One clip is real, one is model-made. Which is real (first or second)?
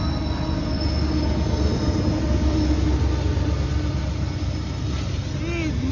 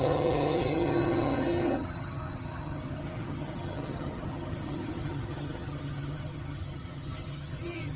first